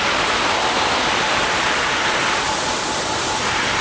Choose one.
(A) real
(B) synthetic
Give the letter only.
A